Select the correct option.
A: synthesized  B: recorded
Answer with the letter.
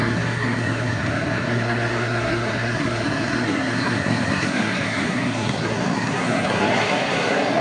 A